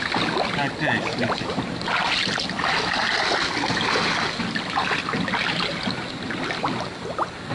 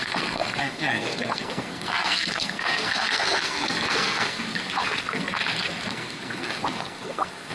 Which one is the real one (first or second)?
first